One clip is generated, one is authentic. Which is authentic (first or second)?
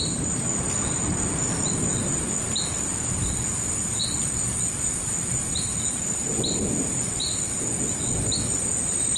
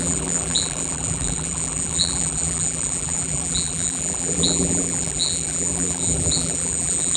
first